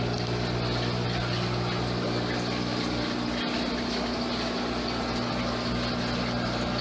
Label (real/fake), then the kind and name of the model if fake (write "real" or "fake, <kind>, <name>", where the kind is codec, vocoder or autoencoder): real